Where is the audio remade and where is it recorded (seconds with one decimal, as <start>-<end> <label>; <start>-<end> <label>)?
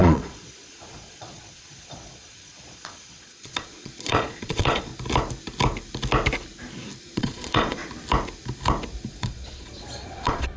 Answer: 0.0-4.9 remade; 4.9-7.0 recorded; 7.0-7.8 remade; 7.8-9.1 recorded; 9.1-10.6 remade